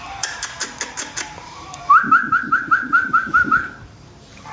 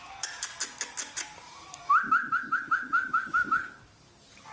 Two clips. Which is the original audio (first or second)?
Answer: second